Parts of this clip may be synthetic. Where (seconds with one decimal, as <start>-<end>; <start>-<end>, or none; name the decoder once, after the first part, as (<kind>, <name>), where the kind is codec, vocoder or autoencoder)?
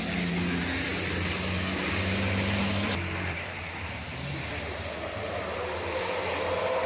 none